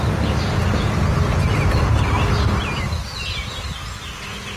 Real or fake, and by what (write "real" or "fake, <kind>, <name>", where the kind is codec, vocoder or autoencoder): real